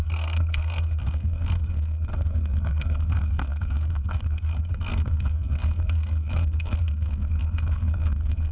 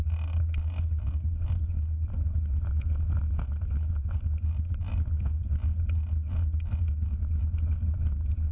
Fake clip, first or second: first